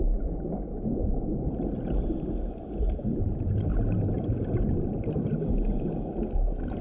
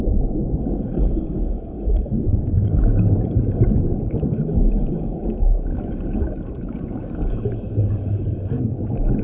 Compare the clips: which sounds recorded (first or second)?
first